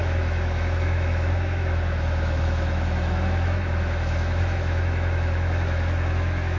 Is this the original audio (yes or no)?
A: no